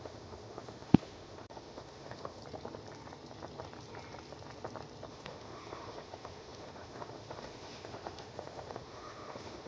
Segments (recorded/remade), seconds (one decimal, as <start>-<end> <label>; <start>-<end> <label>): 0.0-2.4 remade; 2.4-5.1 recorded; 5.1-9.7 remade